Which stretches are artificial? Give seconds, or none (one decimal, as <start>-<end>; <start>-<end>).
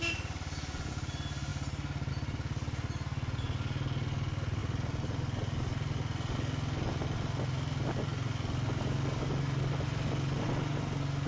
none